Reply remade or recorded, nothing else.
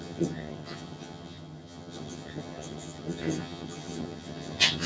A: remade